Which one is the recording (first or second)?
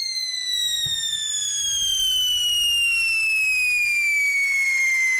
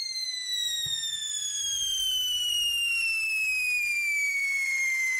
first